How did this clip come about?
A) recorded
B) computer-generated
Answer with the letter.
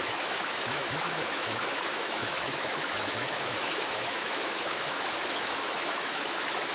B